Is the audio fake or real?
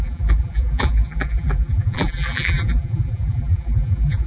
fake